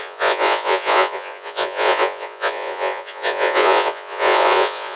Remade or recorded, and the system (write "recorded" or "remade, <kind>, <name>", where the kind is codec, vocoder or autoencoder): remade, vocoder, Vocos